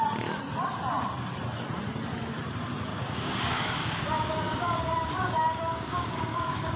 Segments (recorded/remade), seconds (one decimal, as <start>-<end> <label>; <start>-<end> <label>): 0.0-2.9 recorded; 2.9-6.8 remade